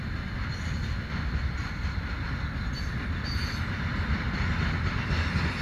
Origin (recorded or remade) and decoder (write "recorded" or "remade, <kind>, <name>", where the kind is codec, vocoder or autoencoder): recorded